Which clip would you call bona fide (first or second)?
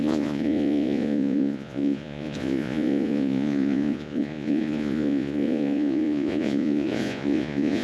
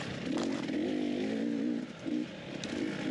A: second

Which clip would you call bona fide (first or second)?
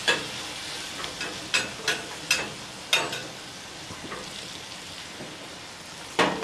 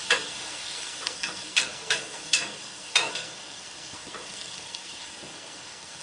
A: first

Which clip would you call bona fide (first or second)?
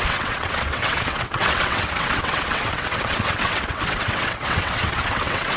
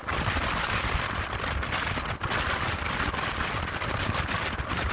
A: second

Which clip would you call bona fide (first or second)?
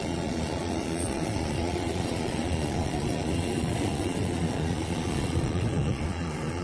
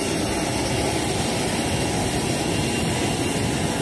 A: second